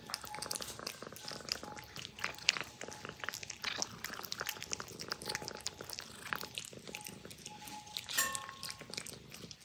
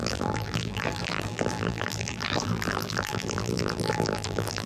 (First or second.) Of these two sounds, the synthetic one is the second